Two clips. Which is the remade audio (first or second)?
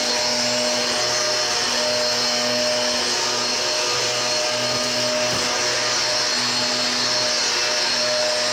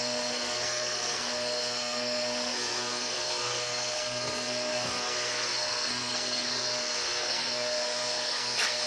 second